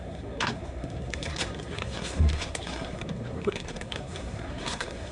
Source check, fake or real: fake